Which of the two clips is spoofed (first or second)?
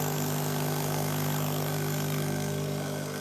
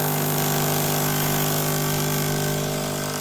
first